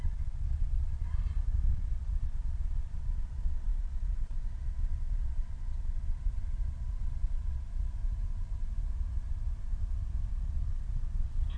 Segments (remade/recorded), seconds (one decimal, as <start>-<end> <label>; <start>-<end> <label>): 0.0-8.0 remade; 8.0-10.3 recorded; 10.3-11.6 remade